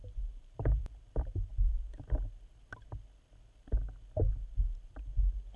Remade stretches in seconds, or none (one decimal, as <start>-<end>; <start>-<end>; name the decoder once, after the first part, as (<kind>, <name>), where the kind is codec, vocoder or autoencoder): 0.0-1.5 (vocoder, BigVGAN v2); 4.9-5.6